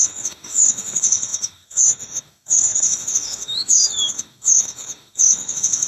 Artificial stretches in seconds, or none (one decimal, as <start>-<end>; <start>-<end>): 0.0-5.9